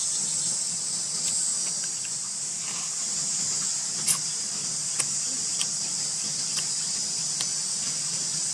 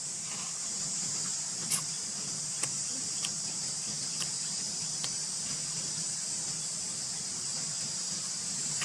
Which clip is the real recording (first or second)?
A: first